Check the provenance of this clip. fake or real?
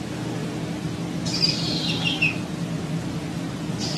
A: real